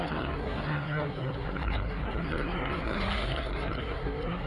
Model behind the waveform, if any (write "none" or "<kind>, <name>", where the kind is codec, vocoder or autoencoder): codec, SNAC